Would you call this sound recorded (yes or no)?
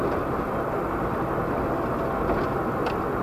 yes